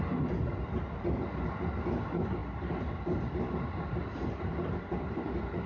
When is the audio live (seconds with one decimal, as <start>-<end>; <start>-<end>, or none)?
0.0-5.7